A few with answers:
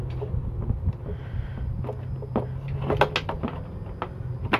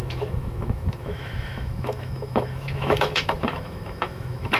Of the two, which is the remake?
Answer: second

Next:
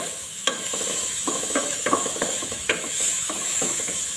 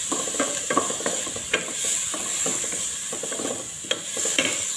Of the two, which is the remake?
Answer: first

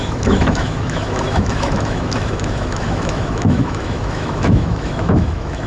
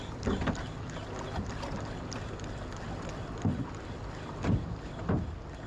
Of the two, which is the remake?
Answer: first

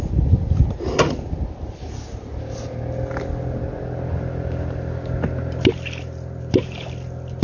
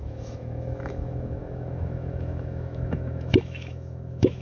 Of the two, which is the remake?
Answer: second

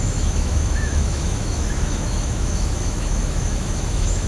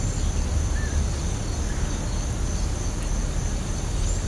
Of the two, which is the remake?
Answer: first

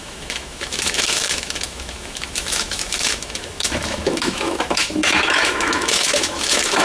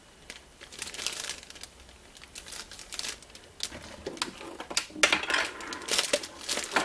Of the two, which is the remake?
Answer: first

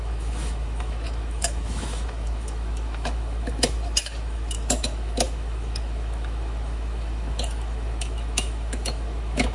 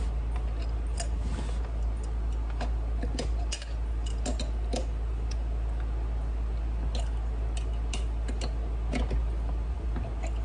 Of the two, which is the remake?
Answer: first